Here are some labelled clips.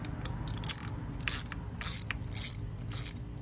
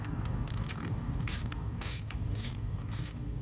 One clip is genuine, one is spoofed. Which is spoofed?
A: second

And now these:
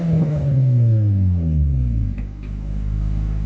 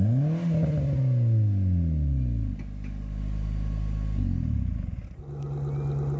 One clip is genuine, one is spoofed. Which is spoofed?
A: first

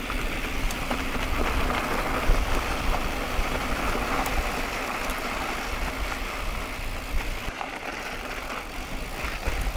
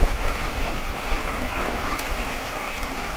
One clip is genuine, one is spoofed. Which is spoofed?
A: second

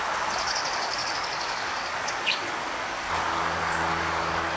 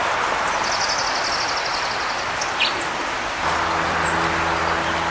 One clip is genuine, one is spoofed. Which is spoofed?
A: first